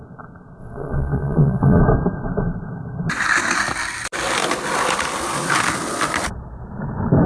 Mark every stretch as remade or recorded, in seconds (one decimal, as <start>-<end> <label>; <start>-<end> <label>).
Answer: 0.0-0.6 recorded; 0.6-1.8 remade; 1.8-7.3 recorded